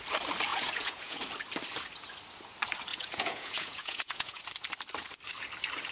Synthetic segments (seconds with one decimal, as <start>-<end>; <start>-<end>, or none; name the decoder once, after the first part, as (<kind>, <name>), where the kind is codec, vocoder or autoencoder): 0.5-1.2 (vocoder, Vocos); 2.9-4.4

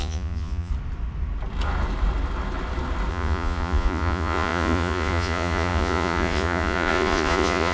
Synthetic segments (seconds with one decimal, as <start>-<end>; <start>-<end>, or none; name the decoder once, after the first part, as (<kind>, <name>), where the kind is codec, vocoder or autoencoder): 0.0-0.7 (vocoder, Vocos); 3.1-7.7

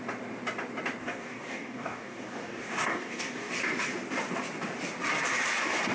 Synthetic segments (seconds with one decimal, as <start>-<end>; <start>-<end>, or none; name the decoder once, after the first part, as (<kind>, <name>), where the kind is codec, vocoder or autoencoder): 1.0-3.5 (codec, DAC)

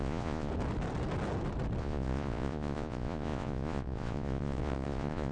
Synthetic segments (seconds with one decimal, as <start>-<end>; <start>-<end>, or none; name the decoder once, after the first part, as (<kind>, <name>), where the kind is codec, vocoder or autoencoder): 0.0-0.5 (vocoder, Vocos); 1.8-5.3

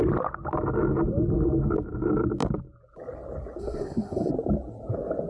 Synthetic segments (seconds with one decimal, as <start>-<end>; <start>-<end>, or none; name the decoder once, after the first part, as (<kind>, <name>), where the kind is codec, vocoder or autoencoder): 3.6-4.3 (codec, SNAC)

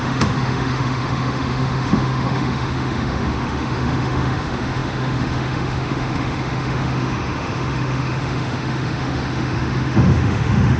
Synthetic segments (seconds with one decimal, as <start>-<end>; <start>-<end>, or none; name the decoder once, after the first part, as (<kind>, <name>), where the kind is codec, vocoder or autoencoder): 0.0-10.8 (autoencoder, DAC-VAE)

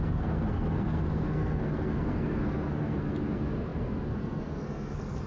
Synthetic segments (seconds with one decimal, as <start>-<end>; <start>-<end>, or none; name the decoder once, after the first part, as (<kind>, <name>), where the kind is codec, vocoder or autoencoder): 0.0-5.3 (codec, SNAC)